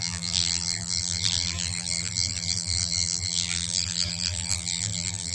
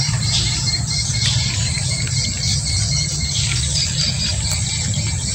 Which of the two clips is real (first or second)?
second